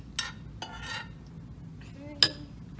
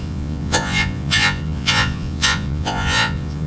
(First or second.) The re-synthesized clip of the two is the second